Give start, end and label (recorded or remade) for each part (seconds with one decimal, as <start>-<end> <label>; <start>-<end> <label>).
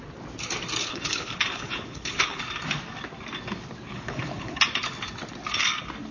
0.0-0.8 recorded; 0.8-2.4 remade; 2.4-3.9 recorded; 3.9-4.6 remade; 4.6-6.1 recorded